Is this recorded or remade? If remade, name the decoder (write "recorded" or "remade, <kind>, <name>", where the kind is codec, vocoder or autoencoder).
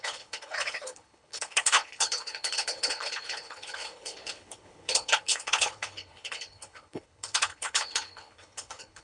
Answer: remade, codec, HILCodec